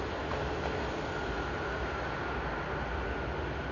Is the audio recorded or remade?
recorded